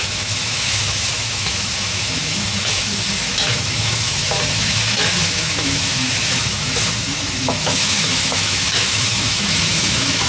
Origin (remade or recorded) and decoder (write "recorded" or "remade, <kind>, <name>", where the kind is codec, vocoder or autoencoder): remade, autoencoder, DAC-VAE